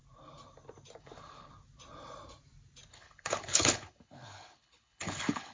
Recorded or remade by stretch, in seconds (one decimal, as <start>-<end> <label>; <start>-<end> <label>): 0.0-1.0 recorded; 1.0-1.5 remade; 1.5-2.9 recorded; 2.9-5.5 remade